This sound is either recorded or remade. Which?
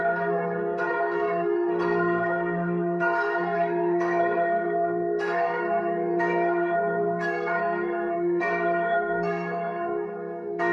remade